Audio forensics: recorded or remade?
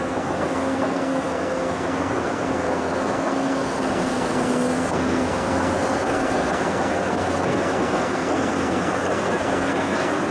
remade